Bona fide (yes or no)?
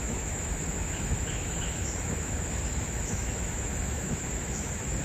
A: no